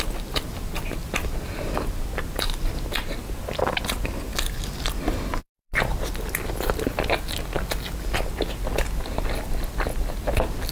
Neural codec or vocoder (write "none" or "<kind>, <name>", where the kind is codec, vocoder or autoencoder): none